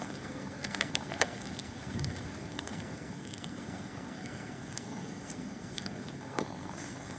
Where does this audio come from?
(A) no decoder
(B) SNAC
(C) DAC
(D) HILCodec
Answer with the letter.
B